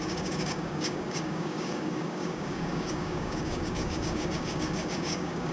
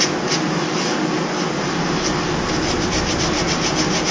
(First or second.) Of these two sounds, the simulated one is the first